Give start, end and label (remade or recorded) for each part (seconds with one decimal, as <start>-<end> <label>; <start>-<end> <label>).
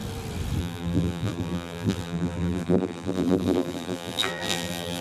0.0-0.6 recorded; 0.6-5.0 remade